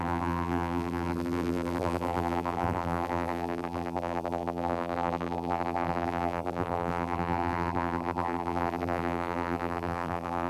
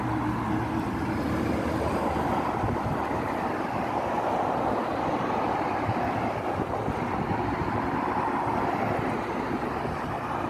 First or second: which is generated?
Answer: first